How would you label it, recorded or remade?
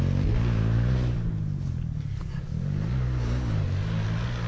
recorded